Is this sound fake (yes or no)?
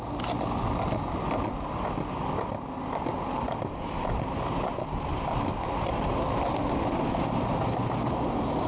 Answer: no